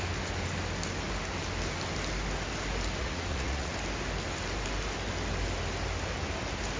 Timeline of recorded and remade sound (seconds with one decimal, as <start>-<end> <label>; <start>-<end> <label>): 0.0-3.0 recorded; 3.0-3.7 remade; 3.7-6.8 recorded